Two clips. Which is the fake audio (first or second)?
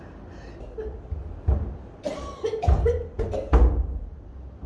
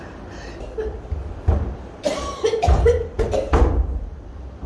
second